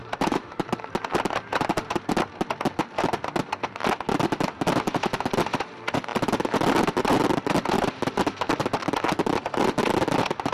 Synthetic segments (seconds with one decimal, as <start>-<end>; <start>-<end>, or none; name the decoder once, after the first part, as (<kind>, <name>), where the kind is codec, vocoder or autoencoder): 0.0-0.7 (vocoder, BigVGAN v2); 1.5-2.1